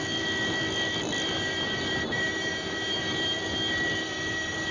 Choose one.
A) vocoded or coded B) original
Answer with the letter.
A